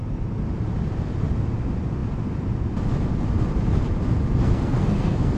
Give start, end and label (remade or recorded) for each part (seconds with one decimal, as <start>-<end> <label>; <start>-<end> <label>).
0.0-4.4 recorded; 4.4-5.4 remade